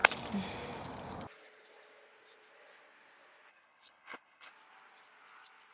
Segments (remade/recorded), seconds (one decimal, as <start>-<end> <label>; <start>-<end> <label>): 0.0-3.5 recorded; 3.5-4.5 remade; 4.5-5.7 recorded